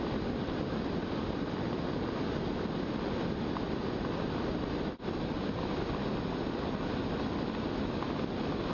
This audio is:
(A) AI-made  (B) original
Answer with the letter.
B